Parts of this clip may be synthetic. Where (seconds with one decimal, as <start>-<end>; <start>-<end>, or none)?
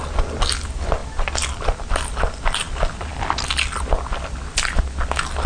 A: none